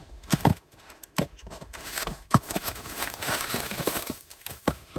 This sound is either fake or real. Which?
fake